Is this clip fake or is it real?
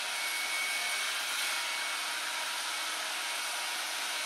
real